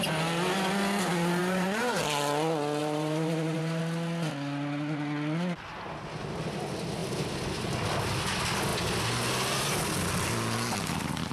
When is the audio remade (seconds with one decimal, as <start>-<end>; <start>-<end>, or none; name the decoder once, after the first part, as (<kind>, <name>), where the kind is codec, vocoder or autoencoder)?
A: 1.4-2.0 (vocoder, BigVGAN v2); 2.8-3.8